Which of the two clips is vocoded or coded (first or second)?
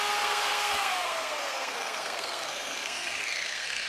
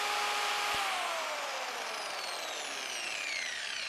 first